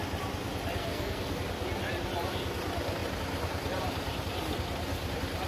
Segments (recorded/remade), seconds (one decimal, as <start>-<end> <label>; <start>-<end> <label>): 0.0-0.8 recorded; 0.8-1.4 remade; 1.4-5.5 recorded